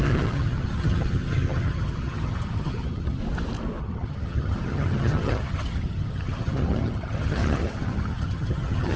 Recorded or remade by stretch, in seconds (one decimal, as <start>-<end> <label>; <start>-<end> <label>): 0.0-3.2 remade; 3.2-3.8 recorded; 3.8-9.0 remade